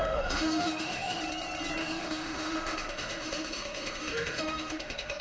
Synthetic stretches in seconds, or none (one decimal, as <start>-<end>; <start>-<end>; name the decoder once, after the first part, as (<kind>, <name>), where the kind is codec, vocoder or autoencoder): 0.0-1.2 (autoencoder, DAC-VAE); 1.8-5.2